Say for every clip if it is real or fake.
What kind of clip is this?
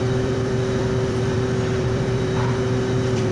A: fake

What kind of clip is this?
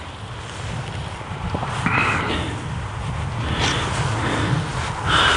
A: real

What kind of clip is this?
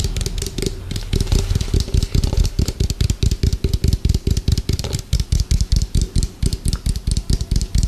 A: real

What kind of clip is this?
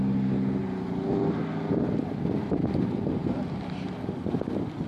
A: real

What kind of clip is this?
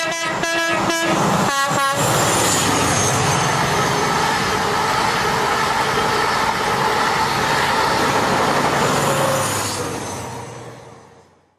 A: real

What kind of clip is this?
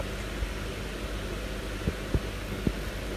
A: real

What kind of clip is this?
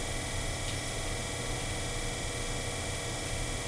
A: real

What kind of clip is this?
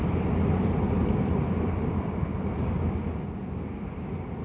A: real